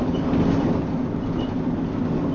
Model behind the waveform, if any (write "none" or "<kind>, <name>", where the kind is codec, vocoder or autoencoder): none